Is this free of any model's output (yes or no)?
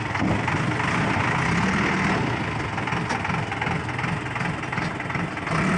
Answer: yes